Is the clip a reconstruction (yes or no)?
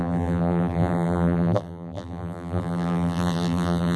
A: yes